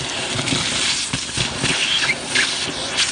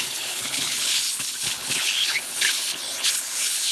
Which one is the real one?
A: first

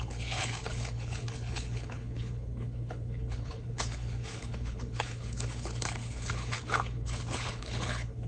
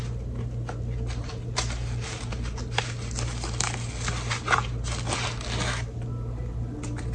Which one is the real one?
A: second